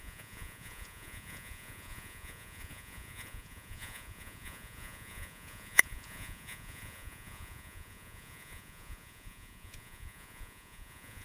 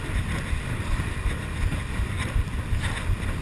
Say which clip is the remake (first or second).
first